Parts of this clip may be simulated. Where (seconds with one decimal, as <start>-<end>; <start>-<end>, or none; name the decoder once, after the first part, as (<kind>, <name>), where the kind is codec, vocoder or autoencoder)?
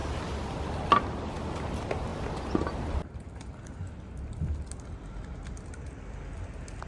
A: none